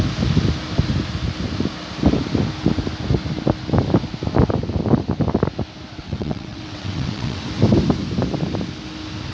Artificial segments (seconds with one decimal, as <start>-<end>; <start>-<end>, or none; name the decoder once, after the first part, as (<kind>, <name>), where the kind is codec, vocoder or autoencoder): 6.0-7.4 (vocoder, WaveNeXt)